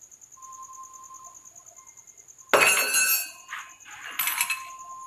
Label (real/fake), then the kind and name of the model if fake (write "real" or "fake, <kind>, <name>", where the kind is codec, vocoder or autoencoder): real